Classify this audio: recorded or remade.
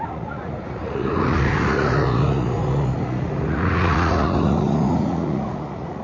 remade